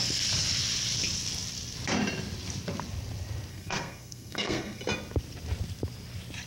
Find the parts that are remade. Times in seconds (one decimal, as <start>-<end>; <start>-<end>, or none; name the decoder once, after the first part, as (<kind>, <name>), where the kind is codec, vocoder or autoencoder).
3.5-4.8 (codec, SNAC)